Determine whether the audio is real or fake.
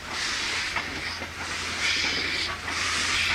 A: real